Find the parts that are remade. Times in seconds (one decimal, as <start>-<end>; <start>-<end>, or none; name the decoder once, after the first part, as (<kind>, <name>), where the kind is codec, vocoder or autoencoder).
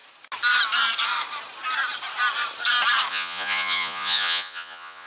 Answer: 3.1-5.1 (vocoder, Vocos)